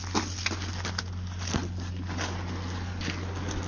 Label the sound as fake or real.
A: real